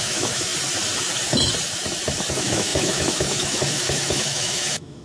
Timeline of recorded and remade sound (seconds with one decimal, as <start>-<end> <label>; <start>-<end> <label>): 0.0-0.5 remade; 0.5-2.3 recorded; 2.3-5.0 remade